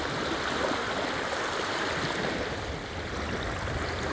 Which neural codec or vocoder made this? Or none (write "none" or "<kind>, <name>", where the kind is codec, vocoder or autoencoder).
none